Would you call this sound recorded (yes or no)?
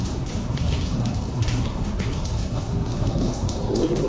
no